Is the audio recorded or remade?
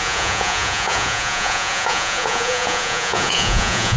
remade